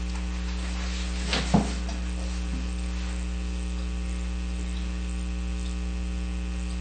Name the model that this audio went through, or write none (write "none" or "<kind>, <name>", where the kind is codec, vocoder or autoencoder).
none